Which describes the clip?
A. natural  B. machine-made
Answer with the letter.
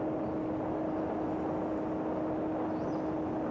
A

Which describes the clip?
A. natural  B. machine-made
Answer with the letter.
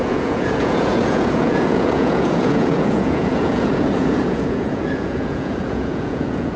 B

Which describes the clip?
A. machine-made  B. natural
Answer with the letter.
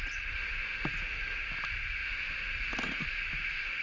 B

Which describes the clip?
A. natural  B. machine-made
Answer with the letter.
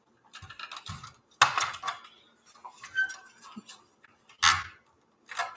A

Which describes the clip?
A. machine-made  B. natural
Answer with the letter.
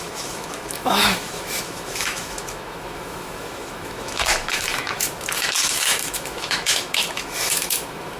A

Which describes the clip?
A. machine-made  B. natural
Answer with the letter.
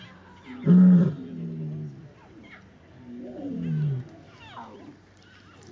B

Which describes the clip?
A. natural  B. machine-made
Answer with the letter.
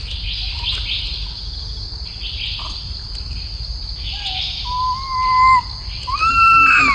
A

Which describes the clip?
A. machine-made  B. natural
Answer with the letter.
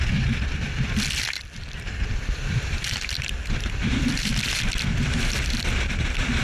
A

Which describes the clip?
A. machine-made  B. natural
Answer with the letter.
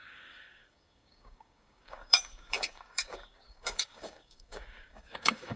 A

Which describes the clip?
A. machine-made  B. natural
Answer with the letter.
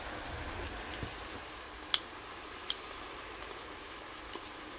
B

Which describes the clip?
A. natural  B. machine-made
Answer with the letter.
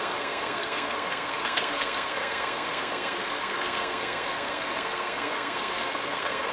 B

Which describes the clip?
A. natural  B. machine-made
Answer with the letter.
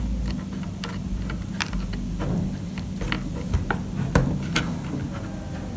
A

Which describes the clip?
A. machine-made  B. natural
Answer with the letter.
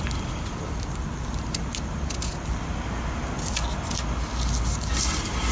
B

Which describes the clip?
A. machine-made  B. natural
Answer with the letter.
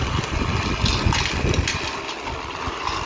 B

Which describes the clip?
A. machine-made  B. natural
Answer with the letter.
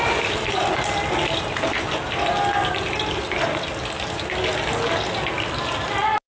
B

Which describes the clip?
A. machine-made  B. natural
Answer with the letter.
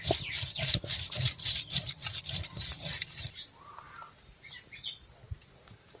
B